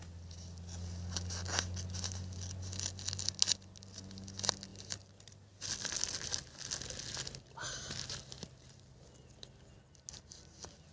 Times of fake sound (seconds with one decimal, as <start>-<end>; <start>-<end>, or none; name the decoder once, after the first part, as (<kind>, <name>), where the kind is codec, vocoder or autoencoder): none